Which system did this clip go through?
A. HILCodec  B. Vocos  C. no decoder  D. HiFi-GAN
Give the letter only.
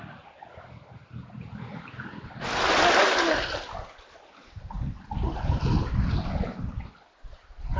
C